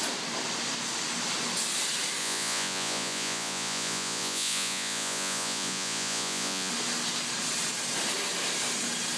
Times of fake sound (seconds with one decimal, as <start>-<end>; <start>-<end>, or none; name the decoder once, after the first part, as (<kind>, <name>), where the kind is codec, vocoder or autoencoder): 2.2-6.7 (vocoder, Vocos)